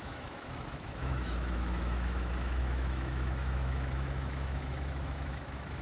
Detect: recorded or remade remade